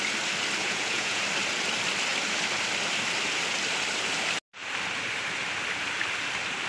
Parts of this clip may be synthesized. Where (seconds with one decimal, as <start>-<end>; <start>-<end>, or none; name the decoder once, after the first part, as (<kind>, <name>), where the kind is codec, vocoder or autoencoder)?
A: 0.6-1.2 (vocoder, Vocos)